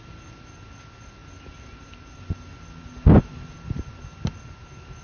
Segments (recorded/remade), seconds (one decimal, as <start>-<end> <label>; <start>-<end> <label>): 0.0-5.0 recorded